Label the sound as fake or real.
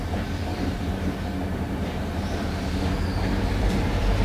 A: fake